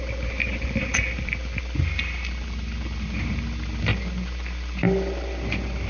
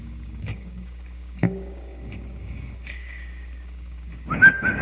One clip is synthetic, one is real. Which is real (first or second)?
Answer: first